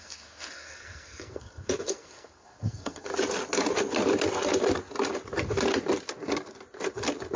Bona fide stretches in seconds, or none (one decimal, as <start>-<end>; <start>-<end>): 3.1-7.4